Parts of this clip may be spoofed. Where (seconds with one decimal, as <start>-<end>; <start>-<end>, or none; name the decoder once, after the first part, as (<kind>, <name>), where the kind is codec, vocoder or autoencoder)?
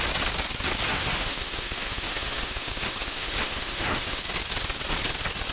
0.9-4.2 (autoencoder, DAC-VAE)